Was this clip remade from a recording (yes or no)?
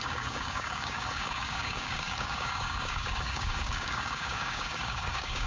yes